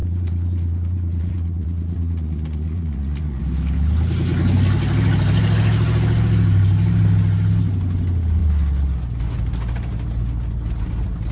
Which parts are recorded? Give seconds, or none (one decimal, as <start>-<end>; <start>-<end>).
3.4-11.3